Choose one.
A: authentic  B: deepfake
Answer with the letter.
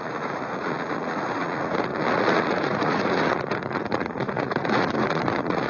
B